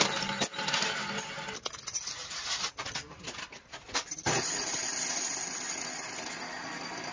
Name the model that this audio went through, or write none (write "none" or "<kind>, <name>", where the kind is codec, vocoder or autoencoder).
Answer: none